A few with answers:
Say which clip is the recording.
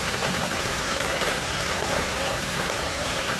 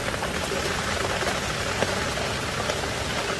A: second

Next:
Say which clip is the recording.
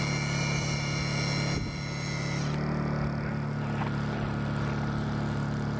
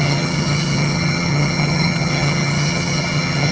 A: first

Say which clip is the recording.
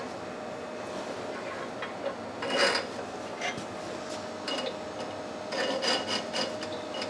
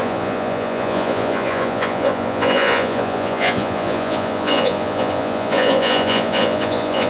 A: first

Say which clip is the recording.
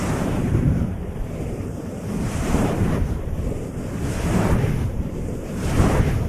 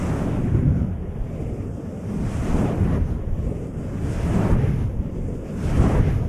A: second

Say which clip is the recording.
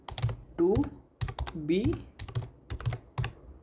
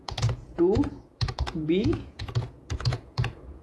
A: first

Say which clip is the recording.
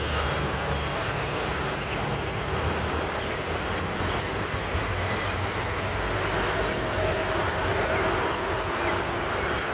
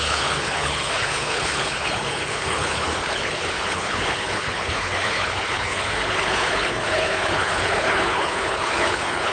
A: first